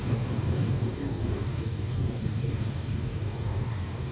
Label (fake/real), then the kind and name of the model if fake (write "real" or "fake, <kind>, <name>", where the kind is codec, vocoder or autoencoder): fake, codec, DAC